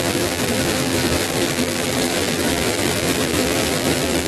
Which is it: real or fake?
fake